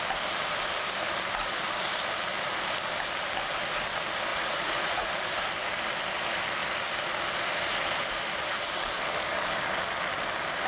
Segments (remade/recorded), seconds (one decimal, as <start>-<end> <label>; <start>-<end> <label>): 0.0-4.3 recorded; 4.3-5.1 remade; 5.1-10.7 recorded